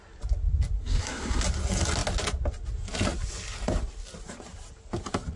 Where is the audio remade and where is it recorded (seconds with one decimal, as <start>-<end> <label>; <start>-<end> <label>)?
0.0-0.8 recorded; 0.8-1.4 remade; 1.4-5.4 recorded